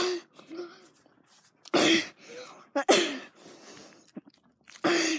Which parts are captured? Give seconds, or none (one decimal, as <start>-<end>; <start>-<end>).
0.0-5.2

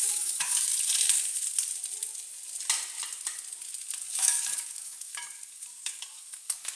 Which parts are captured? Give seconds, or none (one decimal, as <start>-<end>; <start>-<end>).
0.7-4.1

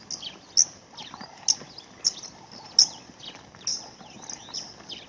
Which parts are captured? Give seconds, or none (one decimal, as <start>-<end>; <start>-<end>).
0.0-5.1

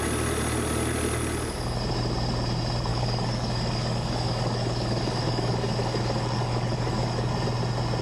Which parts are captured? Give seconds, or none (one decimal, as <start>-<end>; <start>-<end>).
0.0-2.9; 7.3-8.0

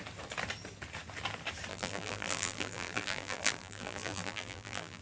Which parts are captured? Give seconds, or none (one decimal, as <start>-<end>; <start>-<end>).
0.0-1.7

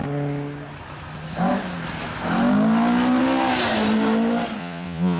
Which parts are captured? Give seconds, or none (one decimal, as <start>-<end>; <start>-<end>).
0.0-4.6